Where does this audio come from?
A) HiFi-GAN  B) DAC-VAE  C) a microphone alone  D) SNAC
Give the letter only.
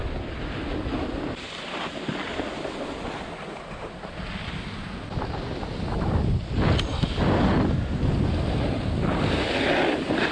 C